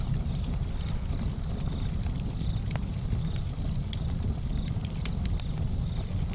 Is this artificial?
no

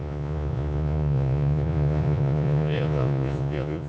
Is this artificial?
yes